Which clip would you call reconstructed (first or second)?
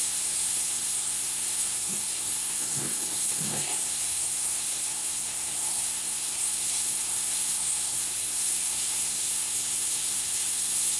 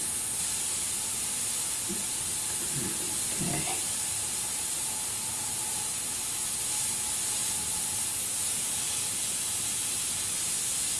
first